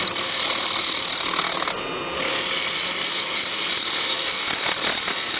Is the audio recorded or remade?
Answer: recorded